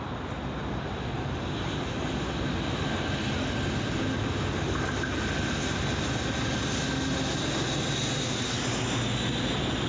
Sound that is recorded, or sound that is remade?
recorded